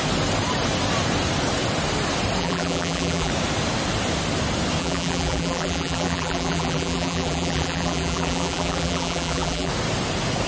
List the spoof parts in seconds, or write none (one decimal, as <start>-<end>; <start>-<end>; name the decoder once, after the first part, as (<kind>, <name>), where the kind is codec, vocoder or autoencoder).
2.4-3.3 (vocoder, BigVGAN v2); 4.8-9.7